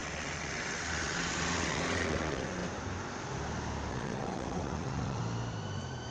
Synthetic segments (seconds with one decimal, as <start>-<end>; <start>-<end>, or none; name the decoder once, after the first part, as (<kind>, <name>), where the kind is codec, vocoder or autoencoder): 0.0-2.6 (vocoder, WaveNeXt); 3.9-5.2